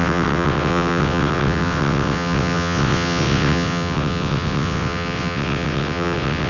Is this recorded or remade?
remade